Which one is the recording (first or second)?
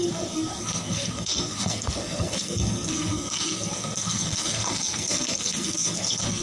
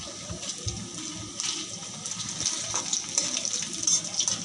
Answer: second